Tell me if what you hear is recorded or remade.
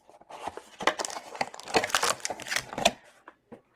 recorded